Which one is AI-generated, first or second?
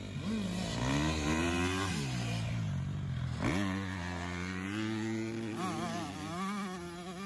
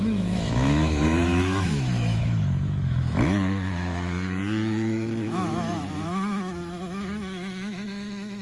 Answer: second